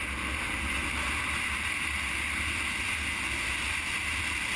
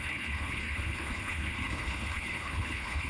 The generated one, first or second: second